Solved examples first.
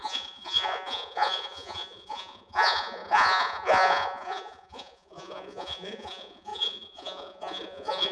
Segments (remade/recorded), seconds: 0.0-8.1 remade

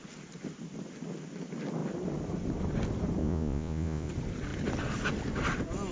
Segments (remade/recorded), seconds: 0.0-3.2 recorded; 3.2-4.1 remade; 4.1-5.9 recorded

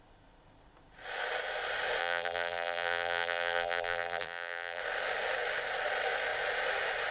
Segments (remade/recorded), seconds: 0.0-2.0 recorded; 2.0-4.8 remade; 4.8-7.1 recorded

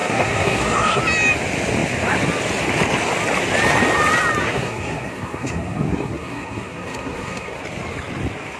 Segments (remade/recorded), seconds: 0.0-1.0 remade; 1.0-4.4 recorded; 4.4-7.6 remade; 7.6-8.6 recorded

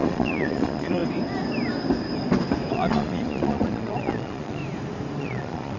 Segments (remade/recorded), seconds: 0.0-1.0 remade; 1.0-2.7 recorded; 2.7-4.6 remade; 4.6-5.2 recorded; 5.2-5.8 remade